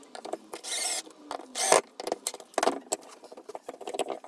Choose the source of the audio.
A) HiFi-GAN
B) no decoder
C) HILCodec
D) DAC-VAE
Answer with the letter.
B